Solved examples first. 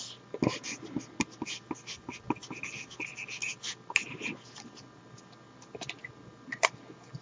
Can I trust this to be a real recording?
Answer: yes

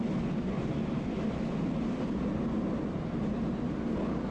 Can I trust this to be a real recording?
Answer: yes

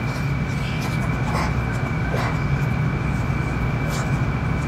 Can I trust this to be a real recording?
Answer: yes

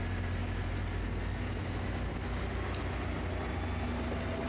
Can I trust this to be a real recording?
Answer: yes